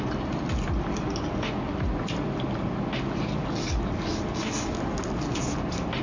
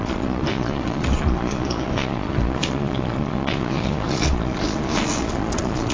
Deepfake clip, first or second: second